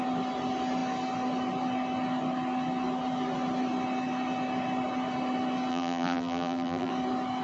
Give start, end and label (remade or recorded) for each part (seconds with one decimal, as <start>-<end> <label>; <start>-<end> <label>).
0.0-5.7 recorded; 5.7-6.9 remade; 6.9-7.4 recorded